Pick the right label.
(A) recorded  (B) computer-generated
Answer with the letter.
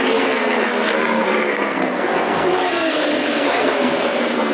B